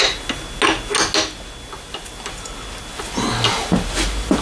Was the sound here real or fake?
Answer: real